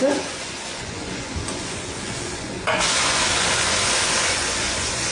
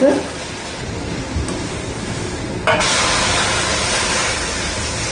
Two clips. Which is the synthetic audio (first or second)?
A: first